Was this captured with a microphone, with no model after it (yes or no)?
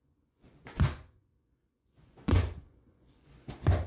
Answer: no